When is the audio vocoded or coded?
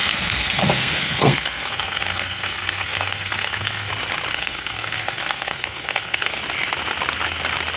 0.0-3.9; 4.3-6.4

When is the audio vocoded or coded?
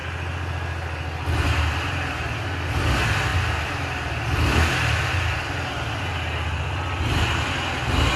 none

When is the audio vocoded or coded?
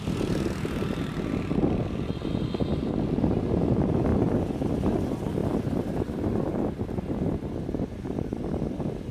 4.1-4.7; 5.4-8.6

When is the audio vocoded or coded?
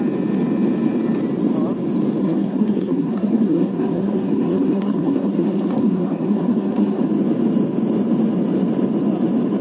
2.2-7.0